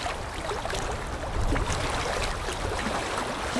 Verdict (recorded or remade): recorded